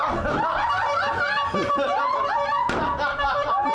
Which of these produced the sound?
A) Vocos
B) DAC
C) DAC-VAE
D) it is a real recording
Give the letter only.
D